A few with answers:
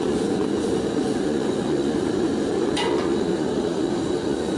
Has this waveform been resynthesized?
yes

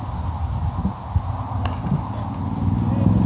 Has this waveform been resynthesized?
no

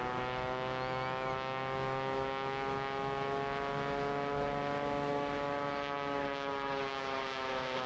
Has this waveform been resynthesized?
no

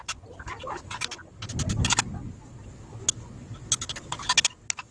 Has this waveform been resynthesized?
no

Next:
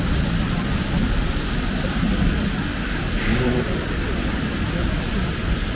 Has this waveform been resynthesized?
no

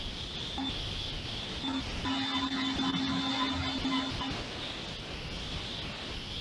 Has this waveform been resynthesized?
no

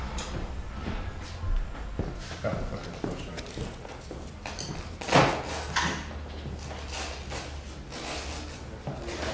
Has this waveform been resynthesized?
no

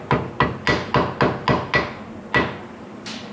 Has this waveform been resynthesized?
no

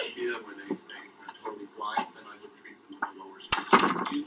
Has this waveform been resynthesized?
yes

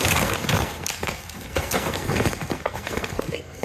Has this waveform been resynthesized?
yes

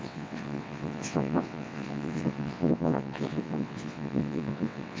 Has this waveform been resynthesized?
yes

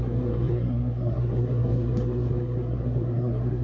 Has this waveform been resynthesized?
yes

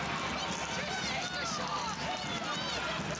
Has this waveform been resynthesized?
no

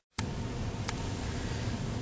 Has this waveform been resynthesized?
no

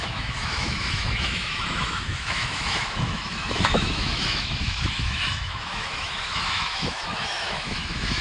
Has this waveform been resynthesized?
yes